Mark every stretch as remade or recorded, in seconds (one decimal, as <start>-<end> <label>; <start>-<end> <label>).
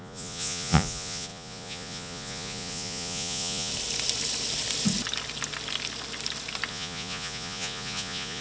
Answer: 0.0-3.7 remade; 3.7-6.7 recorded; 6.7-8.4 remade